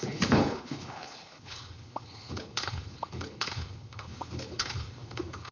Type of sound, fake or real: fake